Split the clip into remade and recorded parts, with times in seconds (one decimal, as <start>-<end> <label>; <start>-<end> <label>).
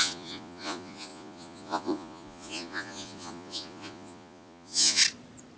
0.0-5.0 remade; 5.0-5.6 recorded